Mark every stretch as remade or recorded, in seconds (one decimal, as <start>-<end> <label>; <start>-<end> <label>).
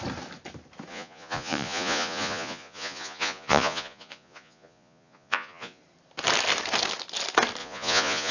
0.0-0.9 recorded; 0.9-5.8 remade; 5.8-7.6 recorded; 7.6-8.3 remade